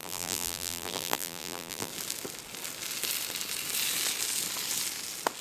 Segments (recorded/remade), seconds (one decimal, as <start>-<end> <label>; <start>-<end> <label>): 0.0-1.9 remade; 1.9-5.4 recorded